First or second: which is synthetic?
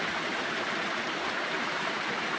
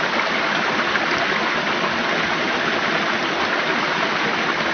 first